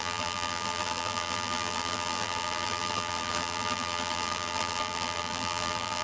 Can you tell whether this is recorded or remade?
remade